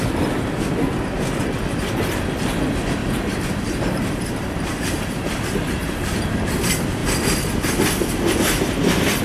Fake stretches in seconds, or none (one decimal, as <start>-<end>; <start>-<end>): 3.0-6.5